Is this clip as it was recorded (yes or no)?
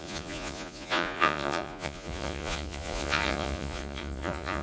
no